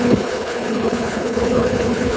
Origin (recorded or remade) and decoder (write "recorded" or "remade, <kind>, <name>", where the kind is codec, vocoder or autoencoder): remade, codec, HILCodec